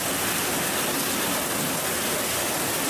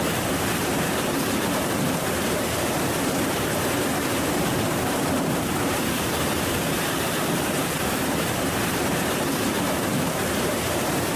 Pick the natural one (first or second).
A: first